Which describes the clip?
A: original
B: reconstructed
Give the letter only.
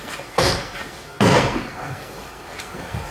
B